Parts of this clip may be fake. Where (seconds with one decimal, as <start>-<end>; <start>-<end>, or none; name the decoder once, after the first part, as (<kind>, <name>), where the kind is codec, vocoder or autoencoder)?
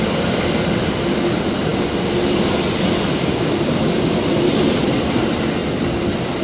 none